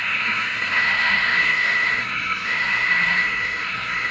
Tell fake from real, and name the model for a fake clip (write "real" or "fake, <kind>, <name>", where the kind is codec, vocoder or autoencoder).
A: fake, codec, SNAC